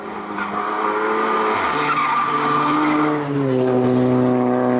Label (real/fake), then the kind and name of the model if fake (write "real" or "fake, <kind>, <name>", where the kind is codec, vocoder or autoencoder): real